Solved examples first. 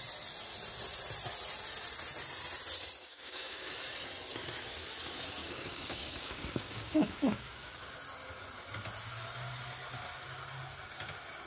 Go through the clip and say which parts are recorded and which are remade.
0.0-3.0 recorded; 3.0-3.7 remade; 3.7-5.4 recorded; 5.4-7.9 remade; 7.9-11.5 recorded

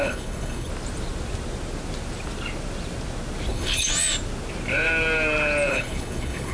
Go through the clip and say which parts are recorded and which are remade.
0.0-0.7 remade; 0.7-3.5 recorded; 3.5-3.9 remade; 3.9-5.7 recorded; 5.7-6.5 remade

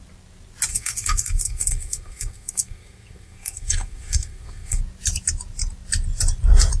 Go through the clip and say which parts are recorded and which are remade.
0.0-0.7 recorded; 0.7-4.8 remade; 4.8-6.8 recorded